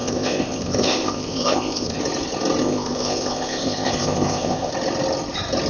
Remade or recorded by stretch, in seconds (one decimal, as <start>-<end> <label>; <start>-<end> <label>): 0.0-2.0 remade; 2.0-2.6 recorded; 2.6-4.7 remade; 4.7-5.7 recorded